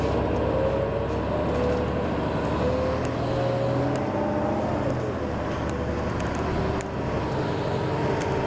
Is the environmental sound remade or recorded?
recorded